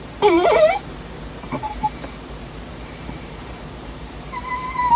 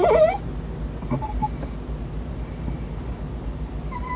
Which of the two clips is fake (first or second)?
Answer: first